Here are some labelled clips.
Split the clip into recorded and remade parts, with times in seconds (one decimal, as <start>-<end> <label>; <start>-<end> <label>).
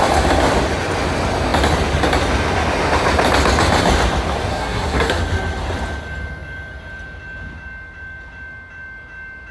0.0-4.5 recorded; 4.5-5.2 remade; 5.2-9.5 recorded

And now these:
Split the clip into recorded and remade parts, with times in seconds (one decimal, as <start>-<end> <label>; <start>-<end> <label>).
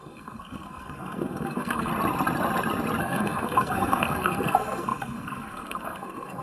0.0-1.9 remade; 1.9-3.0 recorded; 3.0-6.4 remade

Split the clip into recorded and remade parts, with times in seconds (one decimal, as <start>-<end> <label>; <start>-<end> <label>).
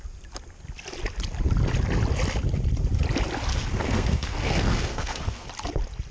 0.0-3.5 recorded; 3.5-5.5 remade; 5.5-6.1 recorded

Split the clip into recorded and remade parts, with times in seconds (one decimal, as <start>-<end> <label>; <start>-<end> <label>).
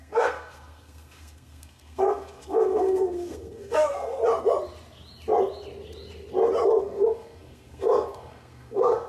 0.0-4.2 remade; 4.2-6.8 recorded; 6.8-9.1 remade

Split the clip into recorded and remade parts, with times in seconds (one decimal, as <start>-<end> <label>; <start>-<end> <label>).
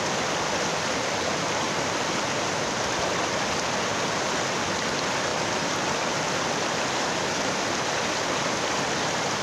0.0-9.4 recorded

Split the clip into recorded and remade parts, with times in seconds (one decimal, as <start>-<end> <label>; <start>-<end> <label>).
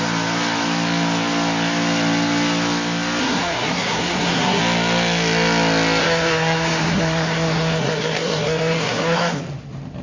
0.0-3.2 recorded; 3.2-4.6 remade; 4.6-6.0 recorded; 6.0-9.4 remade; 9.4-10.0 recorded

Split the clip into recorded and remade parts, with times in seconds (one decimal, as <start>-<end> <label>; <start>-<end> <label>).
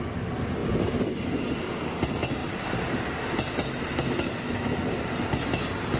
0.0-6.0 recorded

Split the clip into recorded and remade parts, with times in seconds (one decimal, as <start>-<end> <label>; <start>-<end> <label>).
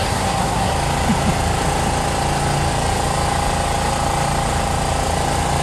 0.0-0.7 remade; 0.7-5.6 recorded